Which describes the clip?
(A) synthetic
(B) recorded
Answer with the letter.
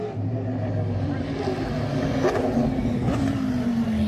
B